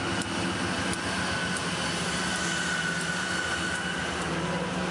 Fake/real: real